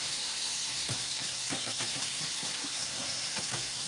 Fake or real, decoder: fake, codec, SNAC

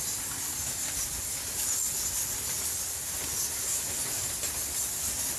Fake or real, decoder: real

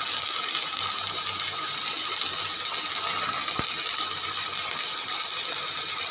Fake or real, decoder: real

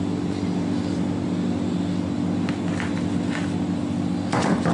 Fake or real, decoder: real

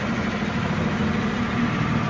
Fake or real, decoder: fake, vocoder, BigVGAN v2